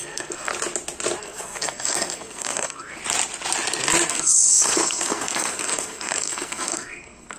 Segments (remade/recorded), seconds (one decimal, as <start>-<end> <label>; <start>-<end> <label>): 0.0-0.5 remade; 0.5-1.2 recorded; 1.2-3.0 remade; 3.0-4.1 recorded; 4.1-7.4 remade